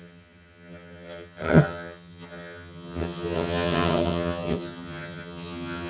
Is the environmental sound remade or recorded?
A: remade